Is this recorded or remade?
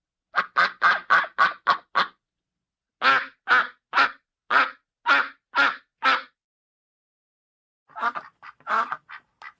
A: recorded